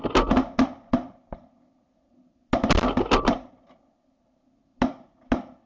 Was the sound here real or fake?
real